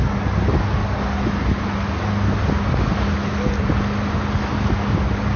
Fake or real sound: real